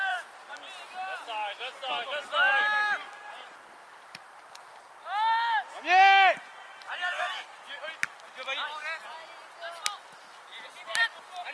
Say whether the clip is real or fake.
real